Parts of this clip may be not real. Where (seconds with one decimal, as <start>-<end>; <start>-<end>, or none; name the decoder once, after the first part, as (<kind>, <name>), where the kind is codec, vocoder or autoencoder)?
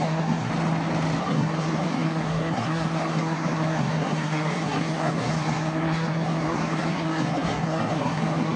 0.0-0.5 (codec, SNAC); 1.2-8.6